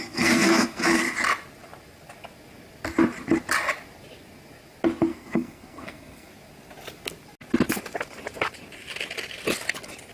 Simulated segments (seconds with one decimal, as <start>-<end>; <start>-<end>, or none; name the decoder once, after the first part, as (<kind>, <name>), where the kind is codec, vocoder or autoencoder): 0.0-1.0 (codec, SNAC); 5.1-6.3

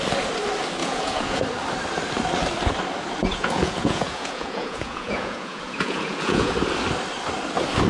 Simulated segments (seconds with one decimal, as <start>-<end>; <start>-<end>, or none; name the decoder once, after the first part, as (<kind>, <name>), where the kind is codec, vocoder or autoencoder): 0.8-1.4 (vocoder, Vocos); 3.2-6.5

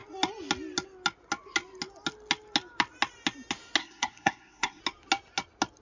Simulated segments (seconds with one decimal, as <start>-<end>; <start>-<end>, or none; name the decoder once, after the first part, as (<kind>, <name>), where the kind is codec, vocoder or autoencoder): 3.8-4.8 (codec, SNAC)

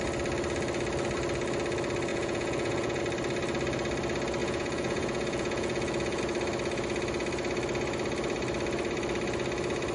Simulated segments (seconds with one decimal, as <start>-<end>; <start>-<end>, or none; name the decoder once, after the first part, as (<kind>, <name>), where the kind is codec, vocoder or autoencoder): 2.1-3.0 (vocoder, Vocos); 4.4-6.2

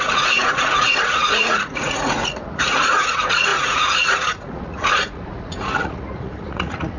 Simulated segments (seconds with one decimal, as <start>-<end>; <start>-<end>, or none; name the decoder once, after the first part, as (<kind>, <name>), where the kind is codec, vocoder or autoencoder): 0.0-7.0 (vocoder, Vocos)

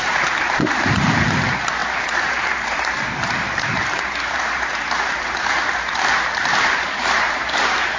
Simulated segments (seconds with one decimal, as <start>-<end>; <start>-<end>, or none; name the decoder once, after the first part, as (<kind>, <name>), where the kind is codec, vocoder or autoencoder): 0.0-8.0 (vocoder, BigVGAN v2)